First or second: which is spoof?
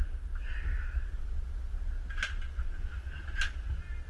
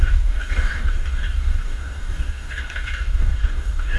second